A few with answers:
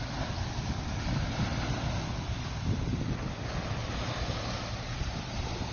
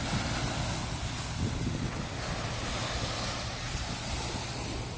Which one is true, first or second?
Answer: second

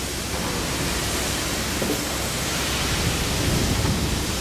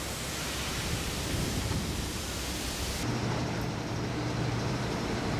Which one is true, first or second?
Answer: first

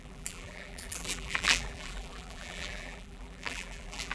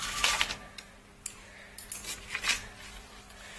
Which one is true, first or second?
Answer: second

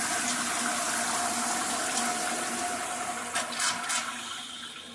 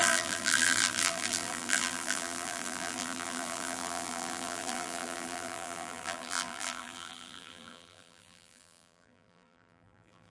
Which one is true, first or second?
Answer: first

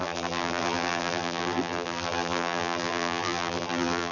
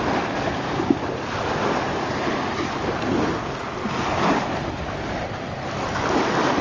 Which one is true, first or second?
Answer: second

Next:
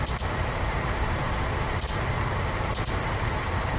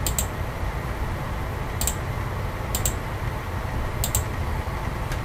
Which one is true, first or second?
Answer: second